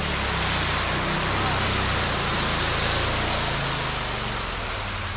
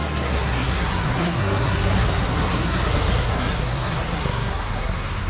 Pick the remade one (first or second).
second